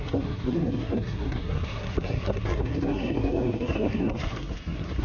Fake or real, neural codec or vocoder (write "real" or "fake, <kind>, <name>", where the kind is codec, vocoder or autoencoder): fake, codec, SNAC